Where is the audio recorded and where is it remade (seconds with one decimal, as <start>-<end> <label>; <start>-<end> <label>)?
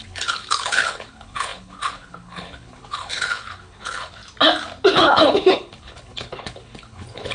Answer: 0.0-4.2 remade; 4.2-4.9 recorded; 4.9-7.3 remade